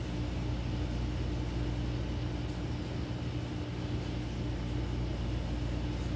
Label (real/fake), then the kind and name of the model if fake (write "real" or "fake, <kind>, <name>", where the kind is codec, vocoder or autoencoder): real